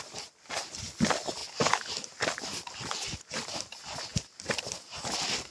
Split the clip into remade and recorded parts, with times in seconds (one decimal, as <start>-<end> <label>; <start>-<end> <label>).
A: 0.0-5.5 recorded